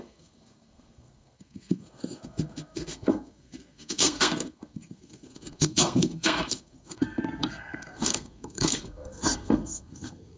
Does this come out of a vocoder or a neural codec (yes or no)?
yes